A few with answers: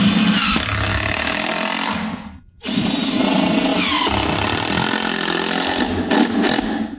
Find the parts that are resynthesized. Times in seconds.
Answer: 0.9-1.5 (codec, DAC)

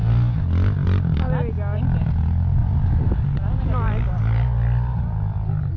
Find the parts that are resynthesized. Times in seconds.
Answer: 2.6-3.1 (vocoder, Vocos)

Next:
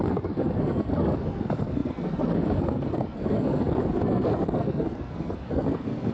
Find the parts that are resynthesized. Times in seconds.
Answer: 0.0-6.1 (codec, SNAC)

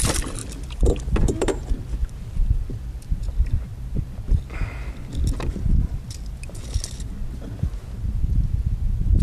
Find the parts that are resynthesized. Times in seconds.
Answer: none

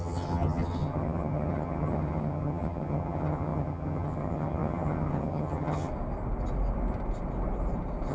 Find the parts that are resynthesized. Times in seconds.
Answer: 0.0-5.9 (vocoder, HiFi-GAN)

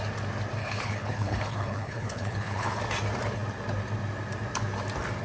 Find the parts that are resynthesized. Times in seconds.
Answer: 0.6-2.8 (codec, HILCodec)

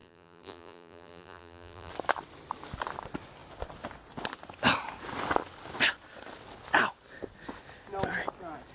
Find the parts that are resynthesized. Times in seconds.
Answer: 0.0-1.9 (vocoder, BigVGAN v2)

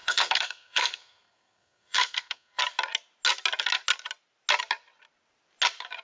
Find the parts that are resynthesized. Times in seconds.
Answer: 0.0-2.6 (codec, SNAC)